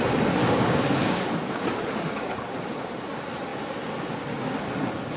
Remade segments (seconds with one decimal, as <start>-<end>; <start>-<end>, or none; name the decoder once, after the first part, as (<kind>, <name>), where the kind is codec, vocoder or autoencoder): 0.4-2.7 (codec, DAC)